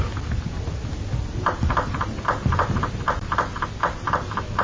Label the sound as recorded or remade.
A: recorded